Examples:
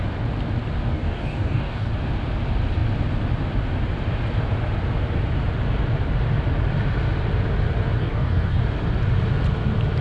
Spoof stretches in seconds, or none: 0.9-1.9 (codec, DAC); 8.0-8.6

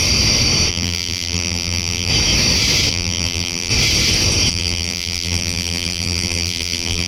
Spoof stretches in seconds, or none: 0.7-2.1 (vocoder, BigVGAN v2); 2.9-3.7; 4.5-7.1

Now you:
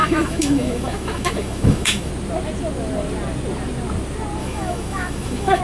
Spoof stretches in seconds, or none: 0.0-2.1 (autoencoder, DAC-VAE); 4.4-5.6